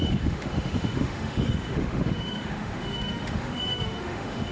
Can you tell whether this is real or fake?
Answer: fake